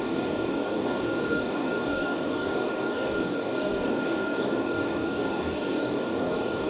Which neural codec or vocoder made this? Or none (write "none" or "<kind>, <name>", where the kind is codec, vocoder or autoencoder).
codec, DAC